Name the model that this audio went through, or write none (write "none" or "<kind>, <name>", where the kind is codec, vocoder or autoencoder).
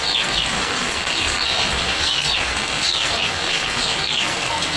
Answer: codec, SNAC